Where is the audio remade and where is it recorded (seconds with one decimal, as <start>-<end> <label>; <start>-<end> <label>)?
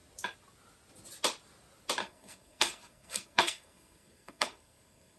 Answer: 0.0-2.0 recorded; 2.0-5.2 remade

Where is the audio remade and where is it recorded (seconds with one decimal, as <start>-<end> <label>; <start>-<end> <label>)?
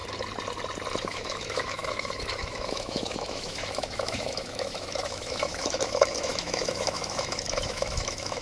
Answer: 0.0-1.0 recorded; 1.0-8.4 remade